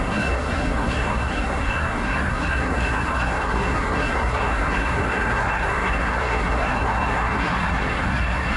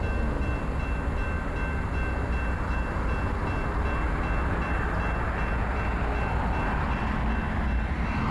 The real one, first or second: second